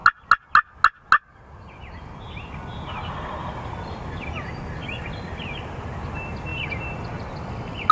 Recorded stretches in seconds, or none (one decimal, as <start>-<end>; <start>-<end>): 0.0-7.9